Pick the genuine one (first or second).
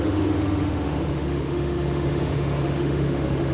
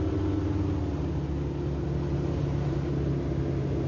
second